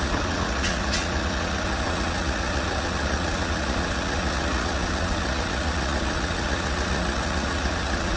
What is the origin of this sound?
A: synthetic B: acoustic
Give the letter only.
A